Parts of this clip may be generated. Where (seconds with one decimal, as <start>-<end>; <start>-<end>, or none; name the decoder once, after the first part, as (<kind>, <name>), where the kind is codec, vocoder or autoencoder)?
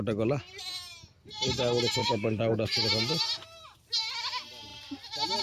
2.0-2.5 (autoencoder, DAC-VAE)